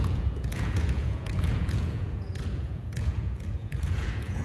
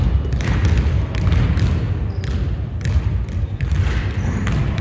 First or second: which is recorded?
second